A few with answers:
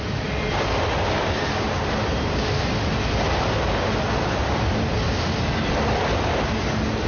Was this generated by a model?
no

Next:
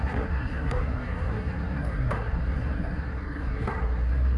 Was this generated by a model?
yes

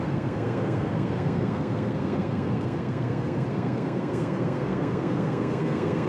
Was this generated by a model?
yes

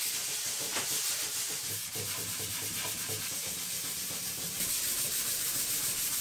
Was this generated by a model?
yes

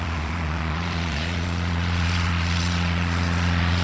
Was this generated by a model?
yes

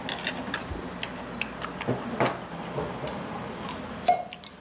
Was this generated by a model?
no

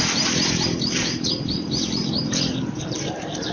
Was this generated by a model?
yes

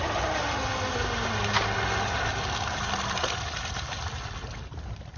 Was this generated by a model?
no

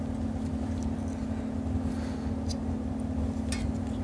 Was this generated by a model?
no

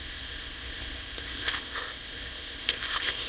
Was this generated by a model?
yes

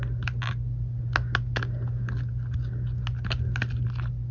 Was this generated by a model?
no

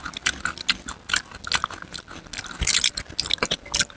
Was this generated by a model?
no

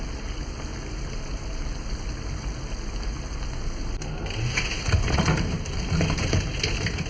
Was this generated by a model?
no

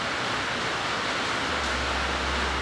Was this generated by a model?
no